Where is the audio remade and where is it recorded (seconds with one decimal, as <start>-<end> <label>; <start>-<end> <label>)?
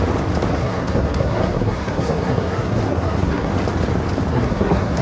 0.0-0.5 recorded; 0.5-3.5 remade; 3.5-4.3 recorded; 4.3-5.0 remade